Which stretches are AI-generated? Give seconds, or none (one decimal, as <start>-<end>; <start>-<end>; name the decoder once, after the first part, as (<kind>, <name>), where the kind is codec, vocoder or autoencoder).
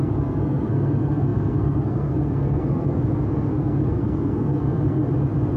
0.0-5.0 (codec, SNAC)